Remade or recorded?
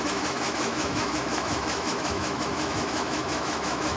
remade